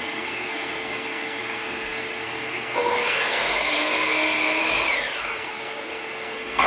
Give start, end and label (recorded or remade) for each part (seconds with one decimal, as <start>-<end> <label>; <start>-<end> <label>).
0.0-4.6 remade; 4.6-5.2 recorded; 5.2-6.7 remade